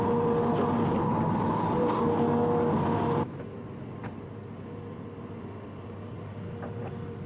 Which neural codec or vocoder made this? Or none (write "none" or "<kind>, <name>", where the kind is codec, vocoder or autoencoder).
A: none